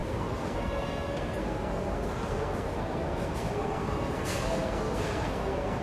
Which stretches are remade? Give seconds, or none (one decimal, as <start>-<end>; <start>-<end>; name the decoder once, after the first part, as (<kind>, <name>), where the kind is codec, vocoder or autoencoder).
0.0-5.8 (codec, SNAC)